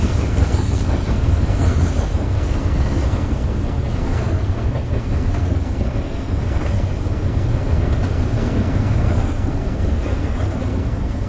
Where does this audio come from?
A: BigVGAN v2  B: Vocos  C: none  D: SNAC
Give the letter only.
D